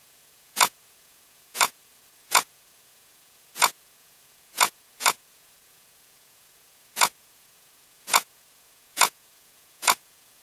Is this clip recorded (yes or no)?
no